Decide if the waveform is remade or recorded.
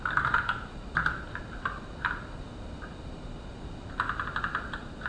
recorded